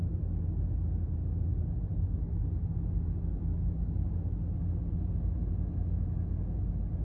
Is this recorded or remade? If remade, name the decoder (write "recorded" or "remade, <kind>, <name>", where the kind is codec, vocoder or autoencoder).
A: recorded